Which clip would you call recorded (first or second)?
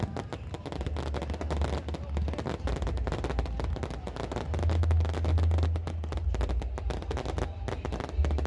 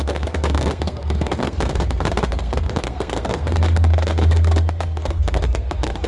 first